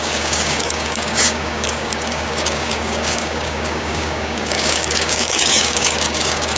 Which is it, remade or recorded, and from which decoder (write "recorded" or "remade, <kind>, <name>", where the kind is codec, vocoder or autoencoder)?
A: remade, codec, DAC